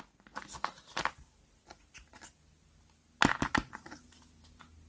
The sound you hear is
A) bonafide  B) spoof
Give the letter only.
A